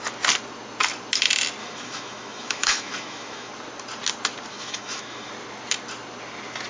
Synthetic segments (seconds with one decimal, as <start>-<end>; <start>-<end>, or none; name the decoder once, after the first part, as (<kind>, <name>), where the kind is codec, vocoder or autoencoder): 1.6-3.5 (autoencoder, DAC-VAE); 4.5-5.3